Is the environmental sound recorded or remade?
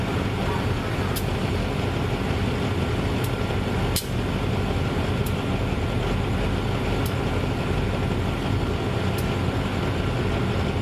recorded